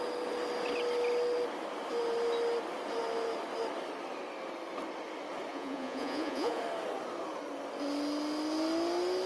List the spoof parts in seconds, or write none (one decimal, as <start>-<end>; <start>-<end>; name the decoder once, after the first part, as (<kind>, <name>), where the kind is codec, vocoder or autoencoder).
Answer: 5.5-6.6 (vocoder, Vocos)